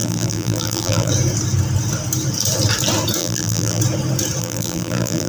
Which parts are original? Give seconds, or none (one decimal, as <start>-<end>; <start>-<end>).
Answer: 1.1-3.2; 3.8-4.4